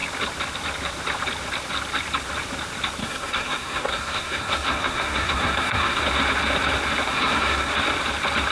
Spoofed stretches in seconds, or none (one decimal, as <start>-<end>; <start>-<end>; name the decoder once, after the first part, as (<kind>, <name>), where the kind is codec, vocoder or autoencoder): 3.0-6.0 (codec, SNAC); 7.1-7.7